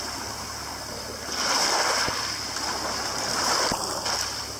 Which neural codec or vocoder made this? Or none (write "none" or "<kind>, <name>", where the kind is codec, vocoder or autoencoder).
none